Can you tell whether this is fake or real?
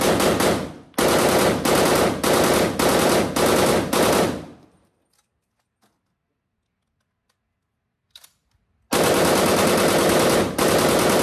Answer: real